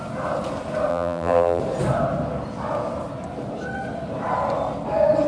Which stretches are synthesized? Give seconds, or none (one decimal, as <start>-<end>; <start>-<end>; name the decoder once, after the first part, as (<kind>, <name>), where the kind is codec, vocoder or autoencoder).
0.9-1.6 (vocoder, BigVGAN v2)